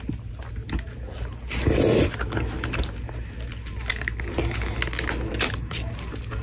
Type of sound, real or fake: real